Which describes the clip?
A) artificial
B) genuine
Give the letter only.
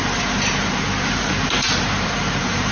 A